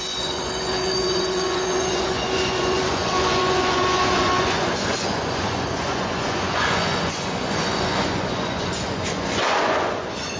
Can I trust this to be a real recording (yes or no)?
no